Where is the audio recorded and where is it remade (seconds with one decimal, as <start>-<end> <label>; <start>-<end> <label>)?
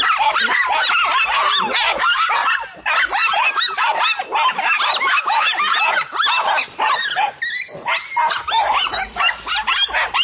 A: 0.0-10.2 recorded